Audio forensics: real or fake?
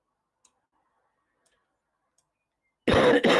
real